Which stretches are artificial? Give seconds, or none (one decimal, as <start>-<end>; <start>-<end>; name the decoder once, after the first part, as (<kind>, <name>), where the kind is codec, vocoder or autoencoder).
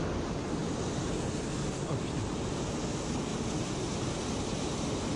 none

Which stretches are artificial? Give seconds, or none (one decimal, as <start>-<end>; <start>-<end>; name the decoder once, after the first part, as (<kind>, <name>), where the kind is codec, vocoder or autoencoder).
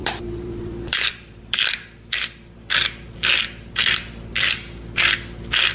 0.0-1.6 (vocoder, BigVGAN v2)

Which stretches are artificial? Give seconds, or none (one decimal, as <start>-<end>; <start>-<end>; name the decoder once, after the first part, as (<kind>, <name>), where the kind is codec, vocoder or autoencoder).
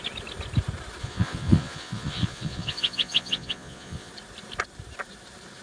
1.0-4.1 (vocoder, Vocos)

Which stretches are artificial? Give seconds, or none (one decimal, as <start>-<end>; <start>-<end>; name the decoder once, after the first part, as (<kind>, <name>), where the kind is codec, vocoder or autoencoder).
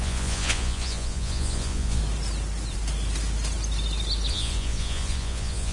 0.0-2.0 (vocoder, Vocos); 4.3-5.7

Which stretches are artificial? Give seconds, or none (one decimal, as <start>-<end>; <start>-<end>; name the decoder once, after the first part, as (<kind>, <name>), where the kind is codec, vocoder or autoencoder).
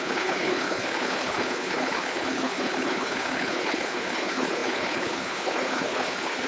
0.0-6.5 (codec, HILCodec)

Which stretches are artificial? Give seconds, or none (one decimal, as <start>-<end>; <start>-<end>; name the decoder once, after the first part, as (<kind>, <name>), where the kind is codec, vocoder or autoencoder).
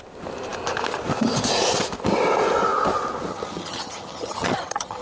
3.3-5.0 (vocoder, HiFi-GAN)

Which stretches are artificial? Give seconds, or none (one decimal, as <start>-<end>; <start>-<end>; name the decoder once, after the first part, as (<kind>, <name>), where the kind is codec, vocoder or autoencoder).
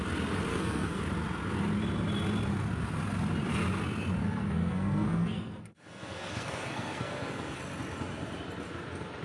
0.5-1.0 (codec, SNAC); 4.2-7.6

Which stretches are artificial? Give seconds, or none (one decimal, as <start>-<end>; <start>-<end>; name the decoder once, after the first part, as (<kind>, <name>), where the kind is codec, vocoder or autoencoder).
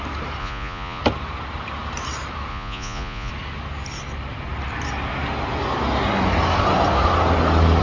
0.4-1.0 (vocoder, Vocos); 2.5-3.3